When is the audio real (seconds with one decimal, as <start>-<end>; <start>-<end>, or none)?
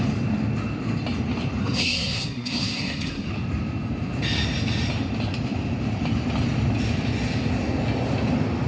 0.0-1.6; 3.3-8.7